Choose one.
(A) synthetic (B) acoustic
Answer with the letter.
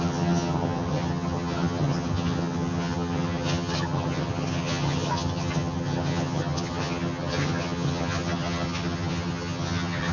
A